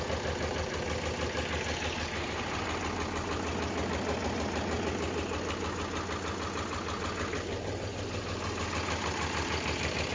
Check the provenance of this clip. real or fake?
real